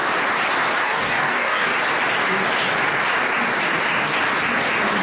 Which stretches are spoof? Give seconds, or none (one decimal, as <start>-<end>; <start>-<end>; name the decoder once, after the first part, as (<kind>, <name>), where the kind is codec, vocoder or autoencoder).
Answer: 0.8-1.7 (codec, DAC)